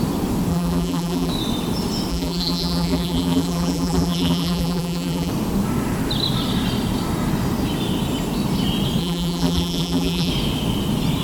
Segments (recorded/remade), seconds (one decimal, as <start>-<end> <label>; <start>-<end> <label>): 0.0-0.5 recorded; 0.5-1.3 remade; 1.3-2.1 recorded; 2.1-5.3 remade; 5.3-9.0 recorded; 9.0-10.3 remade; 10.3-11.2 recorded